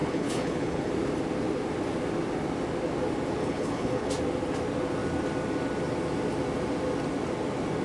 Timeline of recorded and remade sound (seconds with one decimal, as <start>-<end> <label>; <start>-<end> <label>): 0.0-0.9 remade; 0.9-3.4 recorded; 3.4-4.1 remade; 4.1-7.8 recorded

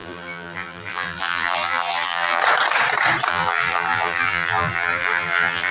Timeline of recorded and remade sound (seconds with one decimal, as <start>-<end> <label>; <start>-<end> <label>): 0.0-2.4 remade; 2.4-3.3 recorded; 3.3-5.7 remade

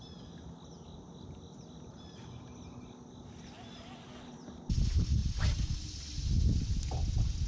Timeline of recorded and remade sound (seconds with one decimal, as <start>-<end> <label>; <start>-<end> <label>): 0.0-7.5 recorded

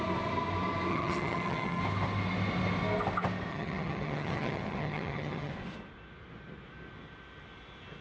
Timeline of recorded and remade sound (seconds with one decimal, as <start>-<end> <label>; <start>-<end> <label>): 0.0-0.9 recorded; 0.9-1.8 remade; 1.8-3.5 recorded; 3.5-5.5 remade; 5.5-8.0 recorded